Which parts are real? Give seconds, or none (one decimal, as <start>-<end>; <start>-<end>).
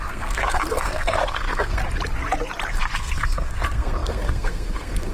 1.8-2.7